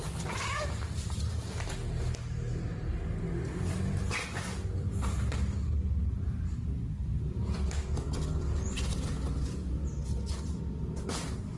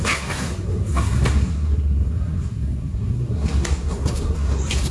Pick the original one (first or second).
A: first